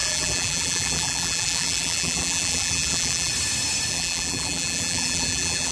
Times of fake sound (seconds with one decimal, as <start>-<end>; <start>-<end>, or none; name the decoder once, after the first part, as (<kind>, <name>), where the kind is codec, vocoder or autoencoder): 0.0-3.3 (vocoder, BigVGAN v2); 3.9-5.7